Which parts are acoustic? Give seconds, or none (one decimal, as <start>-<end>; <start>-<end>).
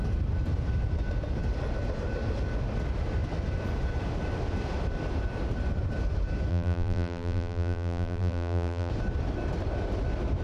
0.0-6.5; 8.9-10.4